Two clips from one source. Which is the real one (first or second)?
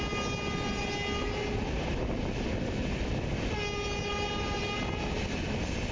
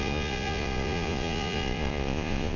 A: first